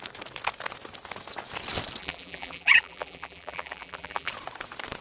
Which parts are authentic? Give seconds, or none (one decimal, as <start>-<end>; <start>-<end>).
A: 0.0-2.0; 4.3-5.0